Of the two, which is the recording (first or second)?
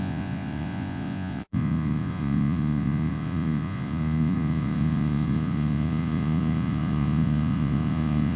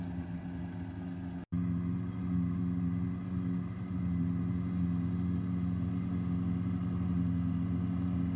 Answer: second